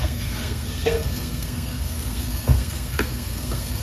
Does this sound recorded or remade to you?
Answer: remade